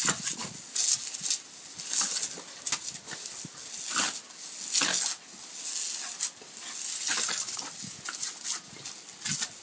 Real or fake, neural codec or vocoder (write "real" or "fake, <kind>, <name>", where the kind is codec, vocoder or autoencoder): real